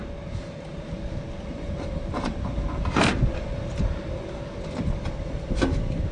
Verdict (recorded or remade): recorded